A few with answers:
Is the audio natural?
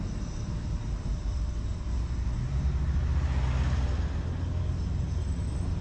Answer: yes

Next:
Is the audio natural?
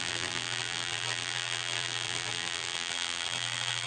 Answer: no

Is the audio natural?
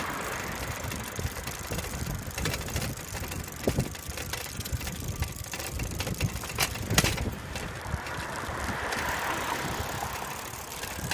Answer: no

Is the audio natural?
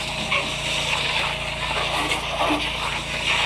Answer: yes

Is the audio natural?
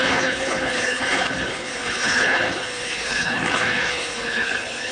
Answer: no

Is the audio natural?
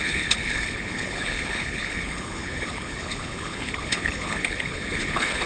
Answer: no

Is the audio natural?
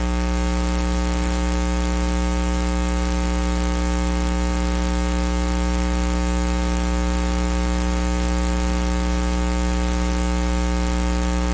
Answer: yes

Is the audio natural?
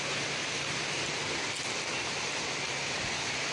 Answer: yes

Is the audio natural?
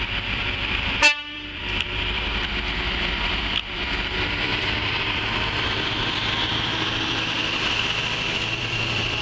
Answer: no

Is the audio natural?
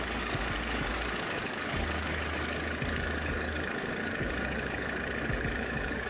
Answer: no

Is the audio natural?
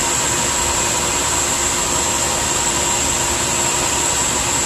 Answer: yes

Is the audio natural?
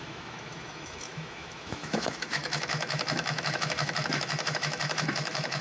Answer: no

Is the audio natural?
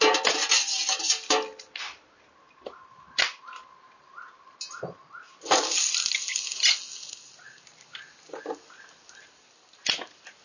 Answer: yes